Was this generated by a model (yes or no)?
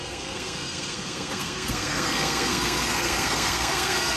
yes